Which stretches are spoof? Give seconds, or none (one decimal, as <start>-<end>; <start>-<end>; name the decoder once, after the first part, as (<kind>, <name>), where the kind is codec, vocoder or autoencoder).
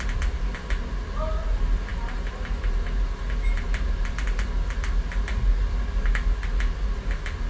none